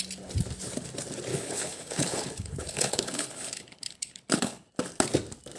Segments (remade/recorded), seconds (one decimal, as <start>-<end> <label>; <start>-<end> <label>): 0.0-1.3 recorded; 1.3-4.7 remade; 4.7-5.6 recorded